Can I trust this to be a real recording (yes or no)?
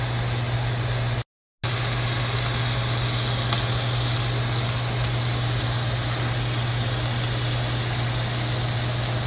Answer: yes